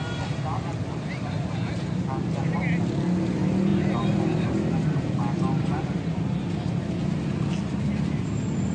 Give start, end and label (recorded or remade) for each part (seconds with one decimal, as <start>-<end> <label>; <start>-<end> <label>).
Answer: 0.0-8.7 recorded